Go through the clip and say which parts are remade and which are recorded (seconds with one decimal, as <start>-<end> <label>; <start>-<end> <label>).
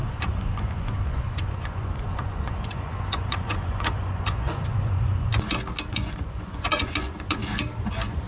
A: 0.0-5.3 remade; 5.3-5.9 recorded; 5.9-7.4 remade; 7.4-7.9 recorded; 7.9-8.3 remade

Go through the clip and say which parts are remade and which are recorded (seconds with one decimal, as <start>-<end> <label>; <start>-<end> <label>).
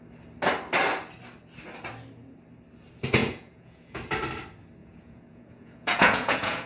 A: 0.0-3.2 recorded; 3.2-4.0 remade; 4.0-4.8 recorded; 4.8-6.7 remade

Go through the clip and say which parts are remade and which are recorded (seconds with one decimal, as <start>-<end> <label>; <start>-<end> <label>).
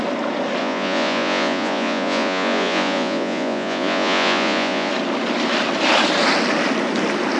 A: 0.0-0.6 recorded; 0.6-4.9 remade; 4.9-7.4 recorded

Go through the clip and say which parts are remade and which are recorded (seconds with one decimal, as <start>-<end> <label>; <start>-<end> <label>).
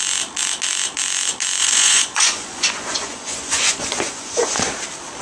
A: 0.0-1.6 recorded; 1.6-4.7 remade; 4.7-5.2 recorded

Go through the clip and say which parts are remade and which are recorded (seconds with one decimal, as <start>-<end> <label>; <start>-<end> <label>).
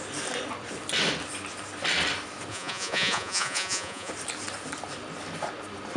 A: 0.0-2.5 recorded; 2.5-4.1 remade; 4.1-6.0 recorded